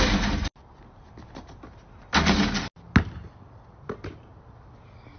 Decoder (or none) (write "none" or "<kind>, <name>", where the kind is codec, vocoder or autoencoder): none